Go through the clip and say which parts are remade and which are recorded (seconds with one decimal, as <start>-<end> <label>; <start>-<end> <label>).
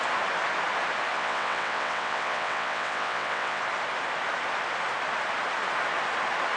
0.0-1.1 recorded; 1.1-3.6 remade; 3.6-6.6 recorded